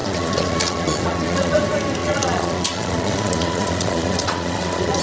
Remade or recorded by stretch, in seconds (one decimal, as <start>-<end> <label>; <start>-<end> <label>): 0.0-1.6 remade; 1.6-2.0 recorded; 2.0-5.0 remade